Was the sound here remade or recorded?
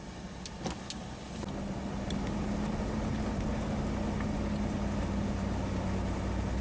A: recorded